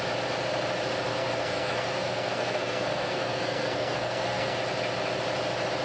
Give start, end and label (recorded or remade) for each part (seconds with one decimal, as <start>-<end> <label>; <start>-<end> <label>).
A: 0.0-1.1 recorded; 1.1-4.6 remade; 4.6-5.8 recorded